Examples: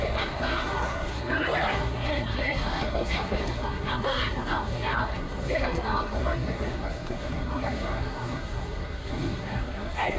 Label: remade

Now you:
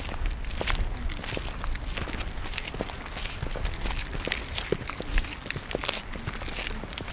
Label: recorded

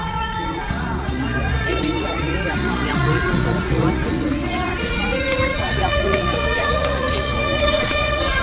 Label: remade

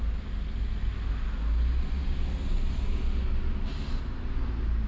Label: recorded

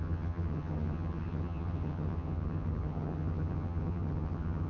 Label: remade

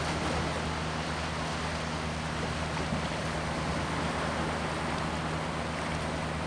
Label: recorded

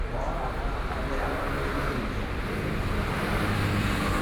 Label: remade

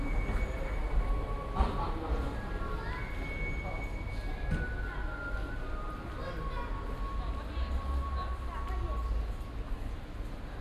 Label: recorded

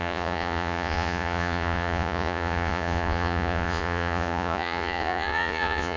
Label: remade